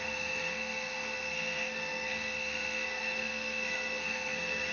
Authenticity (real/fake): fake